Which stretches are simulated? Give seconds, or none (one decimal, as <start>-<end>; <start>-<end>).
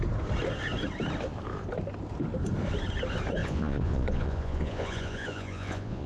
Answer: 3.4-6.1